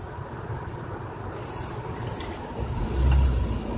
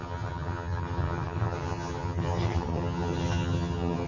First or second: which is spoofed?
second